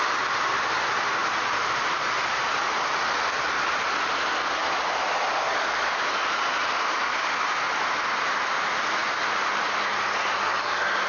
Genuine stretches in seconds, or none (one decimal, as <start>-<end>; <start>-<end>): 0.0-1.2; 2.9-9.0; 9.9-11.1